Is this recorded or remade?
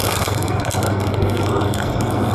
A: remade